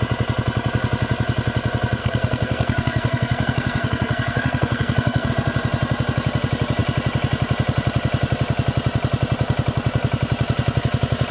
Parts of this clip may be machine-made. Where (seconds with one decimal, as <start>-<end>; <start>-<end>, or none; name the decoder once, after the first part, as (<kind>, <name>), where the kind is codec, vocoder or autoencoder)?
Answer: 2.0-5.3 (codec, SNAC)